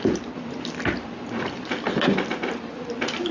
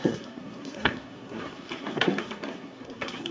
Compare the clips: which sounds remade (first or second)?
second